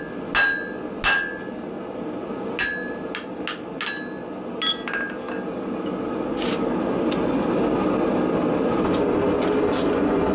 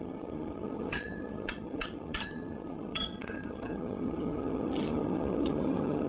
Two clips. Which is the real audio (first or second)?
first